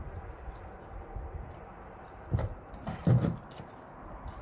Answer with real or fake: fake